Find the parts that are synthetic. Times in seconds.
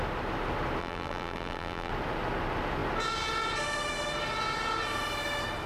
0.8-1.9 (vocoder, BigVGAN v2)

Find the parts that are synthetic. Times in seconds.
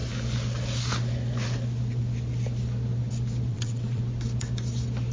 3.5-4.0 (vocoder, WaveNeXt)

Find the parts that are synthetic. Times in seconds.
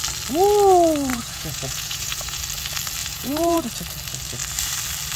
1.1-2.4 (vocoder, Vocos); 3.0-3.6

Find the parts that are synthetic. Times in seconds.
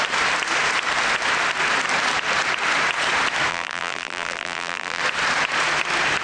3.5-5.0 (vocoder, BigVGAN v2)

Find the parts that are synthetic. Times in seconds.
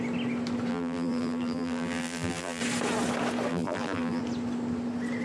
0.7-2.6 (vocoder, BigVGAN v2); 3.5-4.2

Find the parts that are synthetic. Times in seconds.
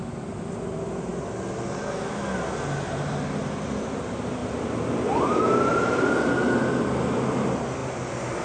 none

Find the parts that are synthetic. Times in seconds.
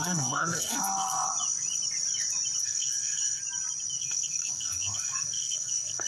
0.0-1.3 (codec, SNAC); 2.6-3.4; 4.0-6.1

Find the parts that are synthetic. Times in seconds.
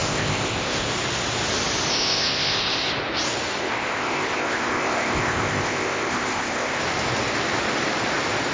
0.0-0.9 (codec, ZipCodec); 1.9-2.9; 3.6-6.8